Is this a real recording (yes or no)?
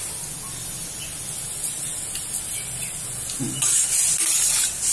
yes